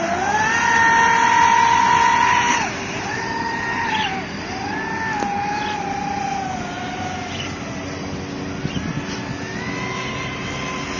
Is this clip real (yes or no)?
yes